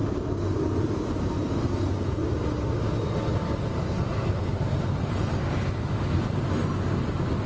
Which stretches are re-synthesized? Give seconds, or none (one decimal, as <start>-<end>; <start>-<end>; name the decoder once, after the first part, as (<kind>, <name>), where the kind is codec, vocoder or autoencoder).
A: 3.3-6.5 (vocoder, BigVGAN v2)